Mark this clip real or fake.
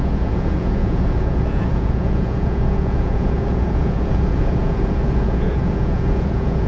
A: fake